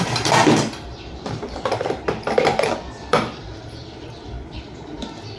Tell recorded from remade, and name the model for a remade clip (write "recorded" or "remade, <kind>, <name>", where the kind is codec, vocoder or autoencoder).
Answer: remade, vocoder, BigVGAN v2